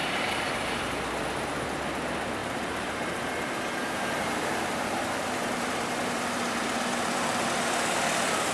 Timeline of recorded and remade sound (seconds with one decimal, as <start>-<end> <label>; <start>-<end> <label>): 0.0-0.8 remade; 0.8-2.4 recorded; 2.4-7.4 remade; 7.4-8.5 recorded